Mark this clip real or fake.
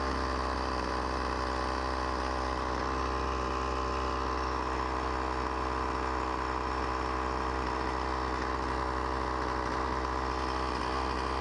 real